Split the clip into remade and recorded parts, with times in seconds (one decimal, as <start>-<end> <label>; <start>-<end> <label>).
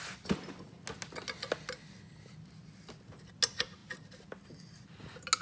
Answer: 0.0-5.4 recorded